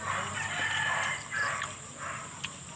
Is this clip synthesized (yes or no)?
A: no